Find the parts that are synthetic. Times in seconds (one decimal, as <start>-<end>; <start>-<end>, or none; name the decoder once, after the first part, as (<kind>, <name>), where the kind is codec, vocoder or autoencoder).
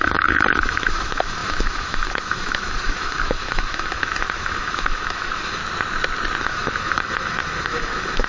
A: 0.0-5.6 (autoencoder, DAC-VAE); 6.4-8.3